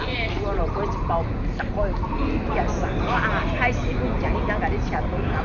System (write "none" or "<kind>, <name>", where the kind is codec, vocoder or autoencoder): none